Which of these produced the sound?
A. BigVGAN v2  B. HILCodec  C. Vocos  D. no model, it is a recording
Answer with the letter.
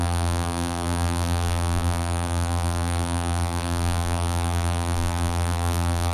A